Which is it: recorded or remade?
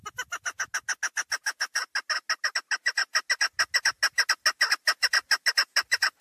recorded